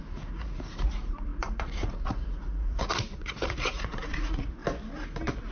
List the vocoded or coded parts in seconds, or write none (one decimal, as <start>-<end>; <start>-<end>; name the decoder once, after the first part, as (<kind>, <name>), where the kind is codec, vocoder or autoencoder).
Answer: 0.0-4.6 (vocoder, Vocos)